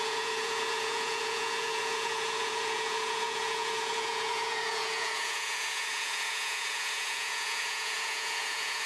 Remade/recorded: remade